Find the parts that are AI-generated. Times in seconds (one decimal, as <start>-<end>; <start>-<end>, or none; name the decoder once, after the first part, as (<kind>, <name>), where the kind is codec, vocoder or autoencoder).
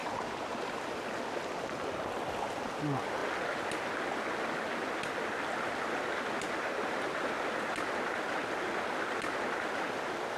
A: 0.0-0.9 (vocoder, BigVGAN v2)